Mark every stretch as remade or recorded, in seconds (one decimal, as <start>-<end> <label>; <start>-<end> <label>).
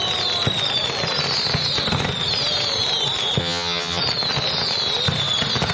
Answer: 0.0-3.4 recorded; 3.4-4.0 remade; 4.0-5.7 recorded